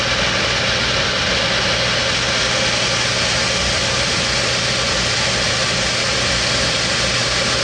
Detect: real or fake real